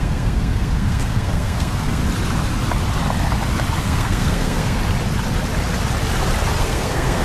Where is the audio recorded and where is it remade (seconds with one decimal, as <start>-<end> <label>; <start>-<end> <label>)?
0.0-2.0 remade; 2.0-3.8 recorded; 3.8-4.8 remade; 4.8-6.6 recorded; 6.6-7.2 remade